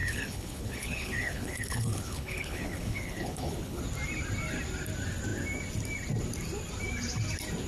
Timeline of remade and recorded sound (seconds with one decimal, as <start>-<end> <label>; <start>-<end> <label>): 0.0-3.8 remade; 3.8-7.7 recorded